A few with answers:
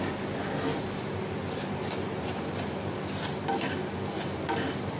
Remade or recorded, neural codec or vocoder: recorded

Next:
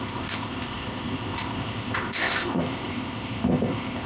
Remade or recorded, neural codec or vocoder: remade, codec, ZipCodec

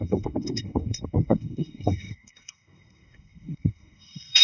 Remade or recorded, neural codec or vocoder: remade, codec, SNAC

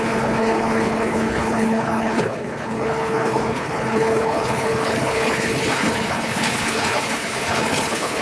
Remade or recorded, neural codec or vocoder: remade, codec, HILCodec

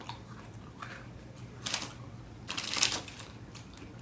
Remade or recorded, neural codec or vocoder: recorded